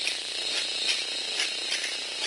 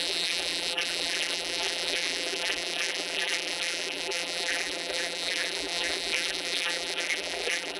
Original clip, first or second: first